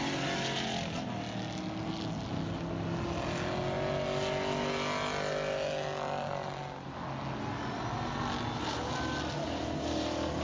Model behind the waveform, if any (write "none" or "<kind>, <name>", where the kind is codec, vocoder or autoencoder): none